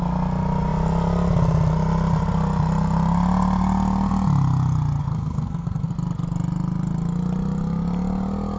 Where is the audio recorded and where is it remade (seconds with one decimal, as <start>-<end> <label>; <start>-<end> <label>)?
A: 0.0-5.0 recorded; 5.0-5.9 remade; 5.9-8.6 recorded